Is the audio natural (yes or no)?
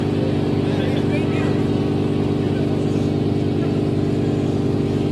yes